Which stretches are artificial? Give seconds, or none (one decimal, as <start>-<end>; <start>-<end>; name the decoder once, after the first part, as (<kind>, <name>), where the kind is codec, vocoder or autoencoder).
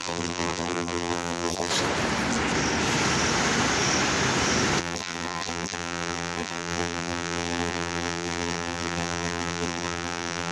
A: 0.0-1.7 (vocoder, BigVGAN v2); 4.8-10.5